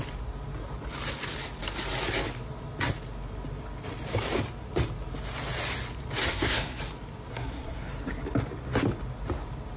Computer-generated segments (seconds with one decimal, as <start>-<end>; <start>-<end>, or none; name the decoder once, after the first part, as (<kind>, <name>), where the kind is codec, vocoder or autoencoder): 6.2-6.8 (codec, SNAC); 7.3-7.9